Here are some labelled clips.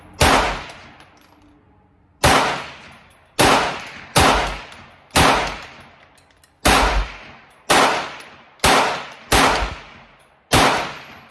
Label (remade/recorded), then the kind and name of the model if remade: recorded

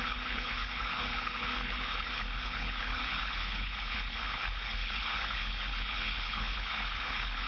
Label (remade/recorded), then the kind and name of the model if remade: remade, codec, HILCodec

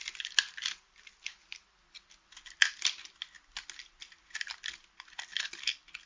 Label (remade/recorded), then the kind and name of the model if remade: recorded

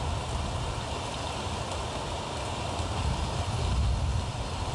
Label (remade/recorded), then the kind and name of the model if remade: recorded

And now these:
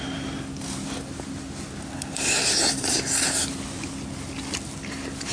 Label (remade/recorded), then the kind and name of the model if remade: recorded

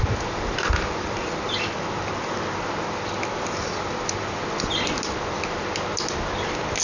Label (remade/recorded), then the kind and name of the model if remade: recorded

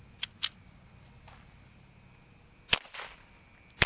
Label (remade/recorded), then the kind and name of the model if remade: recorded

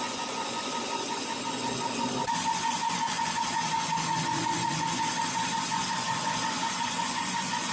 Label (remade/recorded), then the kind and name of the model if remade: remade, vocoder, Vocos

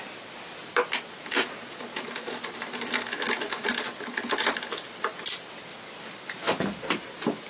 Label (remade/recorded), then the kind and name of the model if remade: recorded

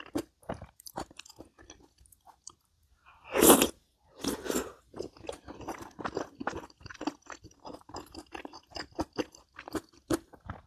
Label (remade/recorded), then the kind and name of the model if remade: recorded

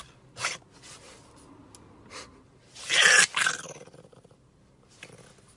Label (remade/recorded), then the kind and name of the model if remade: recorded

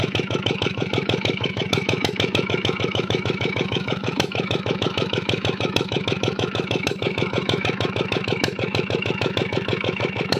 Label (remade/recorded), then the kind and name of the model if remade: remade, autoencoder, DAC-VAE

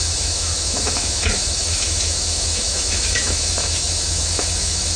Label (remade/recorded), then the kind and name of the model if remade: remade, autoencoder, DAC-VAE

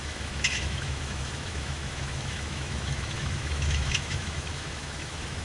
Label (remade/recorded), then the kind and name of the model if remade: remade, autoencoder, DAC-VAE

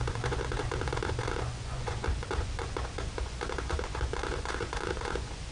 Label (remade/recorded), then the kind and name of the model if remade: remade, vocoder, Vocos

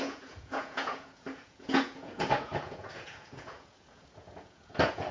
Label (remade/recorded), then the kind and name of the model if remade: remade, vocoder, Vocos